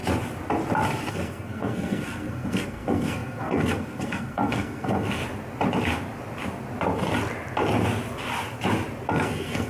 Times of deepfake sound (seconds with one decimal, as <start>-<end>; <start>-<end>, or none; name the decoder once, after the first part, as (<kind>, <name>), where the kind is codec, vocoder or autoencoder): 1.1-5.2 (codec, SNAC); 9.1-9.7